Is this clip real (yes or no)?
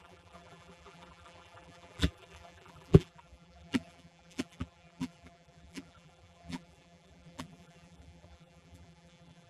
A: no